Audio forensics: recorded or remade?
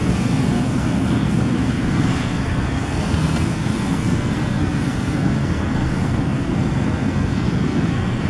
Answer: remade